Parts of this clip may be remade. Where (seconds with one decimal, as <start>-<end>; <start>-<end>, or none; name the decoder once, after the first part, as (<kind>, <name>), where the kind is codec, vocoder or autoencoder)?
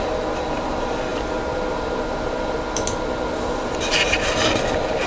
none